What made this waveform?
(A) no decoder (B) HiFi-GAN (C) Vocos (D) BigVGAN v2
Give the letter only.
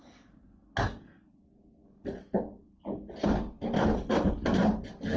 A